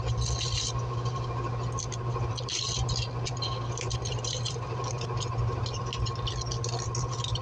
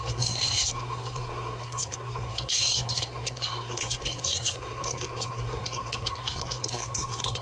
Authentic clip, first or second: first